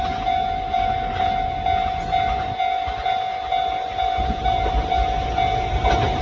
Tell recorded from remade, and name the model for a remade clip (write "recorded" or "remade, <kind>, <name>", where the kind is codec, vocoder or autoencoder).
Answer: recorded